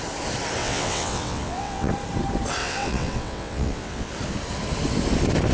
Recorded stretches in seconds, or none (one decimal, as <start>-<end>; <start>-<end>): 0.0-0.6; 1.9-2.6; 4.1-5.5